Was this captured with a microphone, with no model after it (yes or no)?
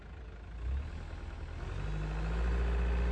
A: yes